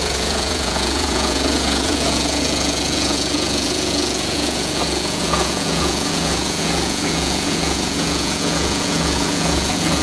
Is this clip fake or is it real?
fake